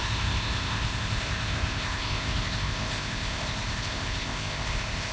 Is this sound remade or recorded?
remade